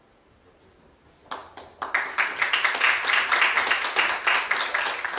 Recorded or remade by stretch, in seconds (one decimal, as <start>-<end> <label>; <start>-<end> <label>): 0.0-5.2 recorded